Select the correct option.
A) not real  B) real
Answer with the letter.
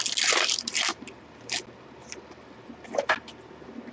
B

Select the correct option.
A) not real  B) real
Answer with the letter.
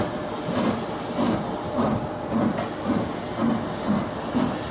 B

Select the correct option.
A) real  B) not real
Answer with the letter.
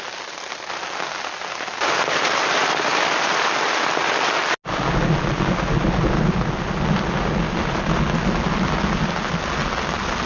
A